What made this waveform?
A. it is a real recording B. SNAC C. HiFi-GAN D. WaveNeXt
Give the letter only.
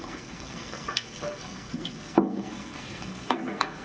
B